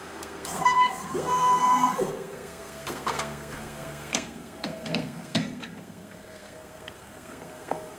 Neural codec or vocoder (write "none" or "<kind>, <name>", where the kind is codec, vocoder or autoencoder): codec, SNAC